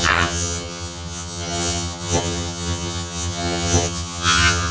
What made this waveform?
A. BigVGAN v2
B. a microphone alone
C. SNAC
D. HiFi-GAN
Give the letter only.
D